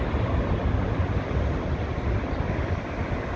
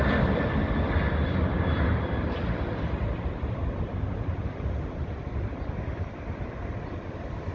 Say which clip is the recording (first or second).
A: first